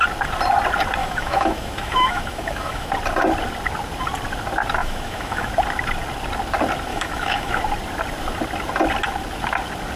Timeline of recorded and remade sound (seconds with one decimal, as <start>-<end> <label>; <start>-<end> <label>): 0.0-1.0 recorded; 1.0-2.9 remade; 2.9-4.8 recorded; 4.8-5.5 remade; 5.5-6.9 recorded; 6.9-7.6 remade; 7.6-10.0 recorded